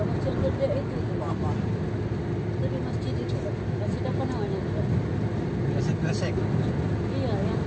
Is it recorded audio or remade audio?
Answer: recorded